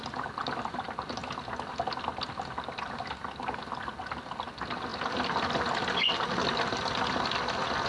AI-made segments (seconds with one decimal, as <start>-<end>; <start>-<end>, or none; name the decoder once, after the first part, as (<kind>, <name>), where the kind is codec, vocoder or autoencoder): none